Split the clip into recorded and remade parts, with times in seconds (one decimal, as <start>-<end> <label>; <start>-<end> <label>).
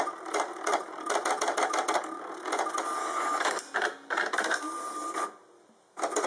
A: 0.0-3.0 recorded; 3.0-3.6 remade; 3.6-6.3 recorded